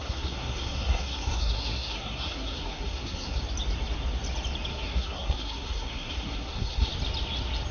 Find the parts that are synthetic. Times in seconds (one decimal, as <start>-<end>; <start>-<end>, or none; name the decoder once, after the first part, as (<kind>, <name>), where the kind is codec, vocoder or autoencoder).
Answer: 0.0-3.4 (codec, SNAC); 4.7-6.9

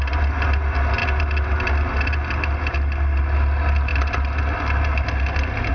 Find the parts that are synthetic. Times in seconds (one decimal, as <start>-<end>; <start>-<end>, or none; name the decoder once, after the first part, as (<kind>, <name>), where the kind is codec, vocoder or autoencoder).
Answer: none

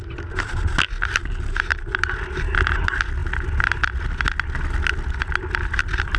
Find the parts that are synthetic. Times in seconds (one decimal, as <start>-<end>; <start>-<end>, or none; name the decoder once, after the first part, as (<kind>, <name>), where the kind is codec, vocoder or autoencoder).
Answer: none

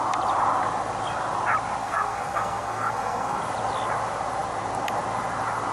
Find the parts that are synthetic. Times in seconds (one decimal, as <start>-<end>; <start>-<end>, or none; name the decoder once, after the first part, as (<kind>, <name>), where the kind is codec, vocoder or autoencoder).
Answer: 1.8-3.4 (codec, SNAC)

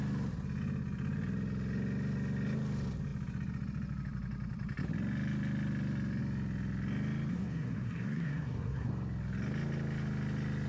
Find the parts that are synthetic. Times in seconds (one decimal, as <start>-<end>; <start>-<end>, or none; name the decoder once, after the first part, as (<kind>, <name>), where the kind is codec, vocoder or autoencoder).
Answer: 7.3-8.9 (codec, SNAC)

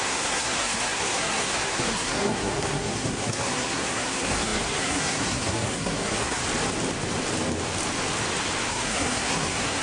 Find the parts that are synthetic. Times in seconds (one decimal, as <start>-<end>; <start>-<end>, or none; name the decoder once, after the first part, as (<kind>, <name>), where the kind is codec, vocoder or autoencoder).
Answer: 0.0-6.4 (codec, SNAC); 8.7-9.8